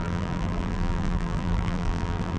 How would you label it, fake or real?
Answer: fake